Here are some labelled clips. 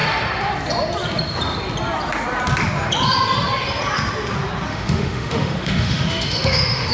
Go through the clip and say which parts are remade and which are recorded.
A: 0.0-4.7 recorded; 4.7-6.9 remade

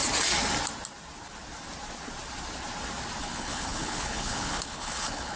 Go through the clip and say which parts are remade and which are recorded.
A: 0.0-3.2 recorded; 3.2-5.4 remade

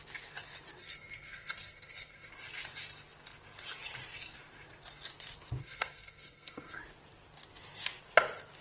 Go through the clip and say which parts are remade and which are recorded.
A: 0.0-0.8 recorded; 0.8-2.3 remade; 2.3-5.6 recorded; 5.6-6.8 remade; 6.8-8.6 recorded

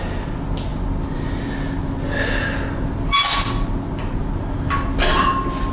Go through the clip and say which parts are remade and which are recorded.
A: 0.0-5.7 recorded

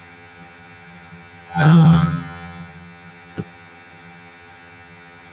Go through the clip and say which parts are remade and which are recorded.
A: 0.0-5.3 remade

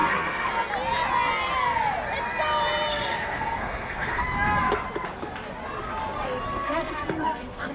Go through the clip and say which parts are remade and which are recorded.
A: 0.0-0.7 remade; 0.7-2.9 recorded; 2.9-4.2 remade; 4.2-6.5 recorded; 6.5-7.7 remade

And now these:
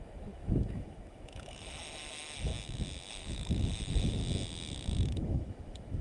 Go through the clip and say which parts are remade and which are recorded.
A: 0.0-2.5 remade; 2.5-3.1 recorded; 3.1-4.2 remade; 4.2-5.0 recorded; 5.0-6.0 remade